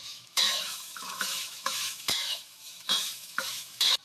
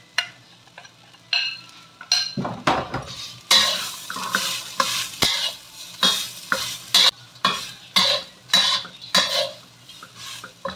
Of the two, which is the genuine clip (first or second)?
second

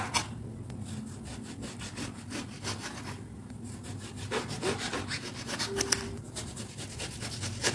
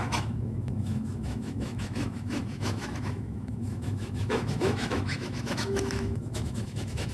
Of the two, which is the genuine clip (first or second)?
first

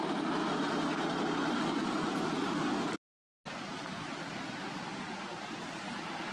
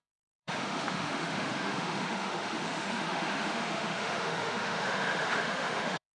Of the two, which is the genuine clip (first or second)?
first